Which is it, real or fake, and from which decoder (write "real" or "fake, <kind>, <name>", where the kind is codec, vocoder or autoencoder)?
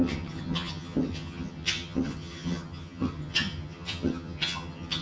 fake, vocoder, HiFi-GAN